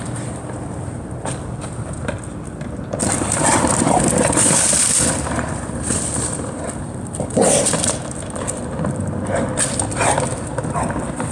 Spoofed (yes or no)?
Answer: yes